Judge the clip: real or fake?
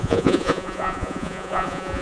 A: fake